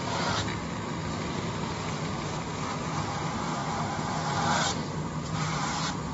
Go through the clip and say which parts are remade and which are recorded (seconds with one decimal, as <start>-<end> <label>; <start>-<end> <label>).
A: 0.0-6.1 recorded